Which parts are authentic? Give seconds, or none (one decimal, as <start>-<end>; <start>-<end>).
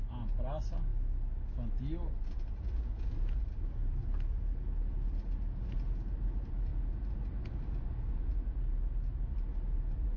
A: 0.0-10.2